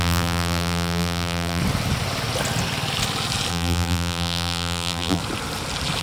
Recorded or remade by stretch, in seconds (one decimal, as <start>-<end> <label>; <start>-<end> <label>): 0.0-1.6 remade; 1.6-3.5 recorded; 3.5-5.2 remade; 5.2-6.0 recorded